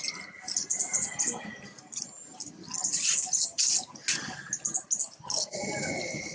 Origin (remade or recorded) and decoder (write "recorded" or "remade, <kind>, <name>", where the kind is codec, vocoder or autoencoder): recorded